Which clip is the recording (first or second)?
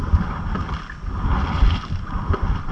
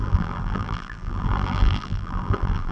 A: first